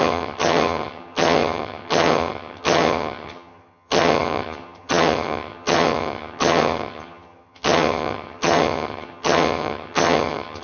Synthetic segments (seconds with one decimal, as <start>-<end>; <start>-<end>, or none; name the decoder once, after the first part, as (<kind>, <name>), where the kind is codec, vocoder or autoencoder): 0.0-10.6 (vocoder, HiFi-GAN)